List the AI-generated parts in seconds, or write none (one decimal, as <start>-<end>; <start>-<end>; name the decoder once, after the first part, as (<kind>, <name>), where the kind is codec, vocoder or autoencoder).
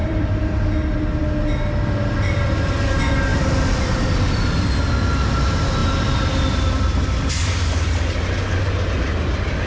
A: 0.0-0.7 (vocoder, BigVGAN v2); 3.3-4.4; 5.8-7.8